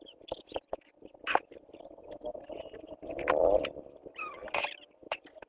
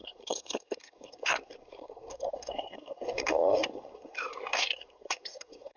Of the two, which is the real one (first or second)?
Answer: first